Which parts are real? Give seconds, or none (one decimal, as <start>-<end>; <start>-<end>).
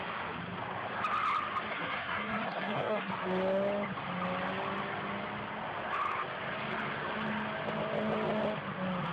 0.0-1.7; 3.1-9.1